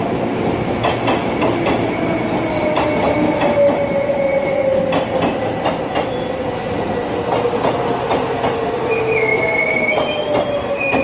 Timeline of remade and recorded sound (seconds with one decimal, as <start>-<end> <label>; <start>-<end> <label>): 0.0-9.3 recorded; 9.3-9.9 remade; 9.9-11.0 recorded